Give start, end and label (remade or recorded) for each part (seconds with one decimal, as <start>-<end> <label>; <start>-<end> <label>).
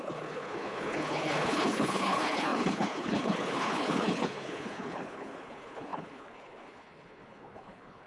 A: 0.0-8.1 remade